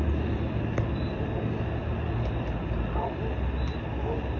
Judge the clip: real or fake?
real